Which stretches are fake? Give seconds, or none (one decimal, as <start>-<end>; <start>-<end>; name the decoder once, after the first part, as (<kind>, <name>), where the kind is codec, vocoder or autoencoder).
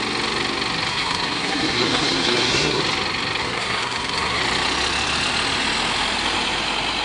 0.9-2.8 (codec, SNAC); 3.4-4.4